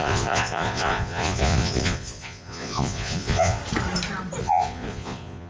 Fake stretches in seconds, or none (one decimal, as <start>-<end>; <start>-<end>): 0.0-3.6; 4.4-5.5